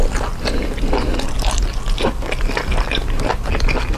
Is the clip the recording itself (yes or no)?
yes